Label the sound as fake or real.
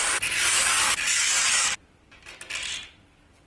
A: real